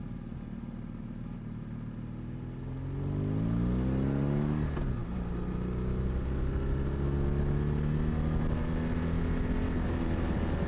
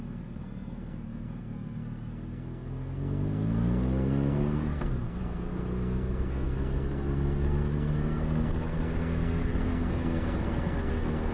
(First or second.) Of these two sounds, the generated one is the second